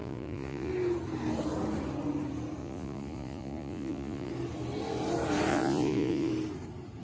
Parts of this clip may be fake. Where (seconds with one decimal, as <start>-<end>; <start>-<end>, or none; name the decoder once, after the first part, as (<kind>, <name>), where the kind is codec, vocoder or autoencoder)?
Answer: 0.0-0.7 (vocoder, Vocos); 2.6-4.3; 5.5-6.3

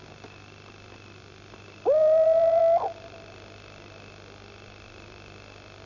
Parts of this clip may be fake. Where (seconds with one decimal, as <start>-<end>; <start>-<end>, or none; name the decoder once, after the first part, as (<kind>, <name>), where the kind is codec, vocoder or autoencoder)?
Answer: 2.0-2.6 (vocoder, Vocos)